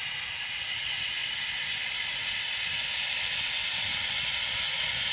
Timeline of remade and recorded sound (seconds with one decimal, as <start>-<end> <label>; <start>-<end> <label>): 0.0-5.1 recorded